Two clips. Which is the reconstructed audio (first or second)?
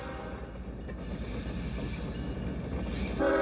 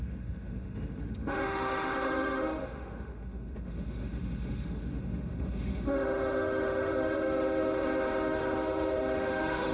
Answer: second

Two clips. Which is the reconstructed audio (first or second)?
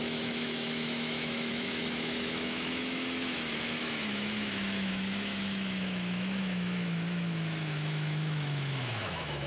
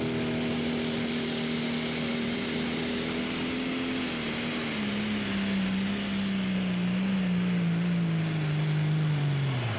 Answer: first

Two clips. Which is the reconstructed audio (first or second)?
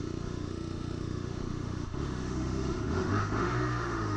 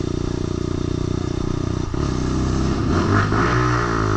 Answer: first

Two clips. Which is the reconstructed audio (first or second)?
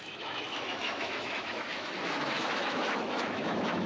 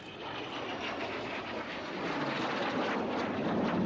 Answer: first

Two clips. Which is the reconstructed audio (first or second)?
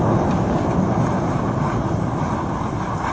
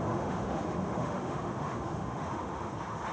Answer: second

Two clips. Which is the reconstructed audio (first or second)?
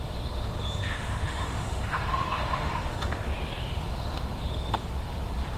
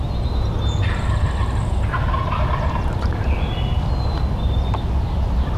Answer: first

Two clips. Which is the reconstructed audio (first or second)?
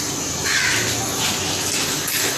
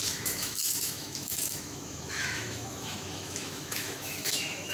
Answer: second